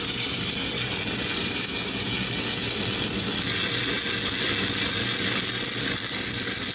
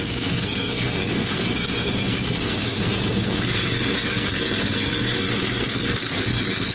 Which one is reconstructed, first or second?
second